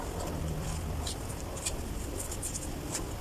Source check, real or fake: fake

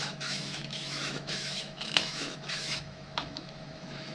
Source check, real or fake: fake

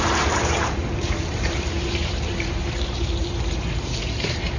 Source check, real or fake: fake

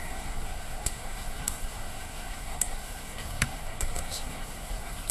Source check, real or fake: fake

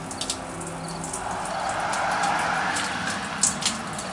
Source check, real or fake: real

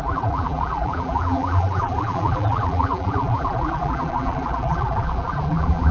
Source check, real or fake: fake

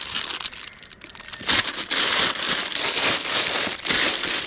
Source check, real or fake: real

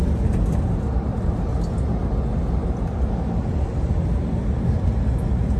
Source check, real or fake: real